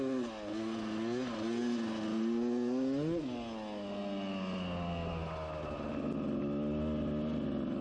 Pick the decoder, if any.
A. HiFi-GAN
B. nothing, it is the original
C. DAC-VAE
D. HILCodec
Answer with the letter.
B